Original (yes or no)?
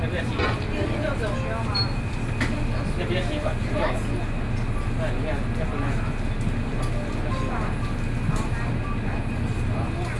yes